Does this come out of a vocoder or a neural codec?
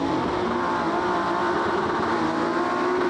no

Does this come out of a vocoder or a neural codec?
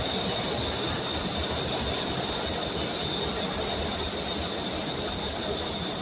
no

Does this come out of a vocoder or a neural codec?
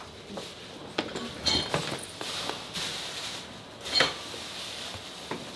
no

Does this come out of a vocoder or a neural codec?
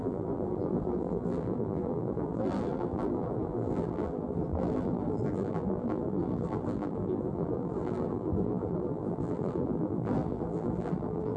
yes